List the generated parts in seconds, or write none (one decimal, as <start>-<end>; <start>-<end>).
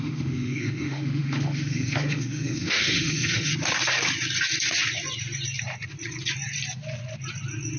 0.0-3.5